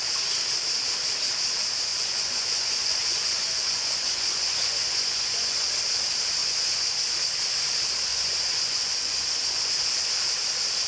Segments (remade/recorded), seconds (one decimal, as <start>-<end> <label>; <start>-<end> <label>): 0.0-1.9 recorded; 1.9-5.7 remade; 5.7-6.4 recorded; 6.4-6.9 remade; 6.9-8.1 recorded; 8.1-9.7 remade; 9.7-10.9 recorded